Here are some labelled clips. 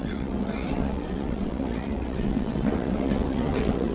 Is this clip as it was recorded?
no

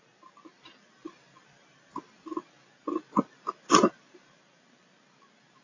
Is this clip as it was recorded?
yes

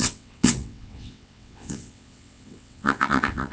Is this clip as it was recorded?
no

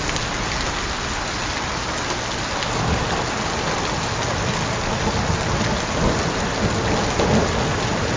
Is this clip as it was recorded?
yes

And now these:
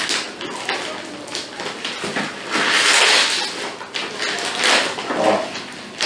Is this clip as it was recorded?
yes